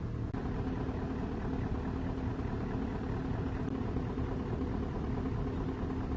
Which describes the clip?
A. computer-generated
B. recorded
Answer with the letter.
B